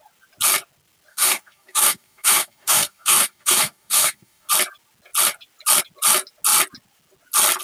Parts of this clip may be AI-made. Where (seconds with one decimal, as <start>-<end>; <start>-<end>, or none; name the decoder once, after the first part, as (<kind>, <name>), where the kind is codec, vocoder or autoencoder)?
1.1-4.5 (codec, DAC)